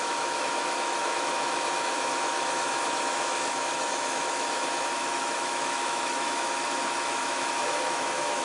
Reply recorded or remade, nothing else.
remade